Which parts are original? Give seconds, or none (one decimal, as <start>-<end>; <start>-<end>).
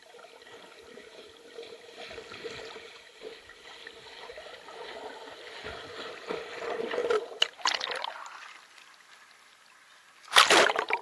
0.0-11.0